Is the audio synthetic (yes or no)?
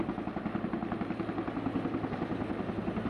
no